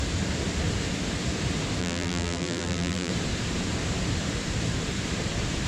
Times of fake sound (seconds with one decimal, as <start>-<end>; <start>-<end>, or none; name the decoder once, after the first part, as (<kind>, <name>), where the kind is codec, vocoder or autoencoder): 1.8-3.1 (vocoder, BigVGAN v2)